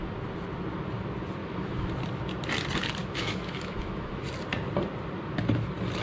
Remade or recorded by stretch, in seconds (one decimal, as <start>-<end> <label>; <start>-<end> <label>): 0.0-1.4 recorded; 1.4-1.9 remade; 1.9-3.0 recorded; 3.0-4.3 remade; 4.3-6.0 recorded